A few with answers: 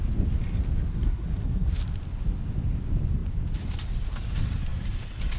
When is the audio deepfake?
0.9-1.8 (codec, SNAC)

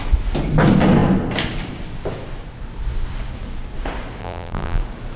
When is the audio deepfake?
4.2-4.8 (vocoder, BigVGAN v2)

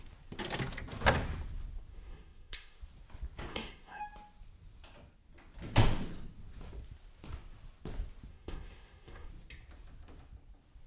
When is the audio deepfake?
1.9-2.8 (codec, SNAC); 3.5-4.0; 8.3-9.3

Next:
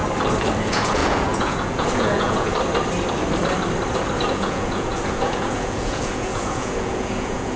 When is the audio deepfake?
0.6-2.5 (vocoder, Vocos); 4.3-7.6

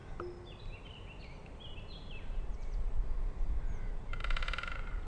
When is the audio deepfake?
2.5-3.0 (vocoder, BigVGAN v2); 4.2-5.1

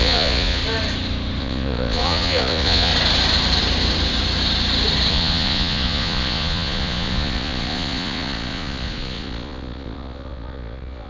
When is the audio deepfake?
0.0-0.6 (vocoder, Vocos); 1.4-2.9; 5.1-11.1

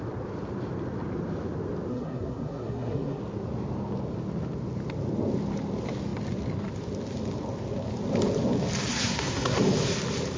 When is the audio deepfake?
1.9-3.2 (codec, SNAC); 8.9-9.6